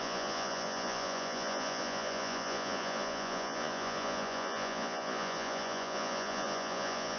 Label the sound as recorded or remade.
remade